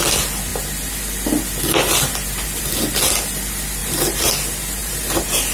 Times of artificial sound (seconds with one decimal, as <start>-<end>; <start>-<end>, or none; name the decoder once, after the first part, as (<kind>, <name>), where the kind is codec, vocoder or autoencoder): 3.8-4.3 (vocoder, BigVGAN v2); 4.8-5.5